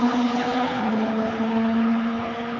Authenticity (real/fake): fake